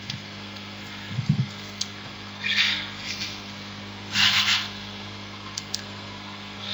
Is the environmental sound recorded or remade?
remade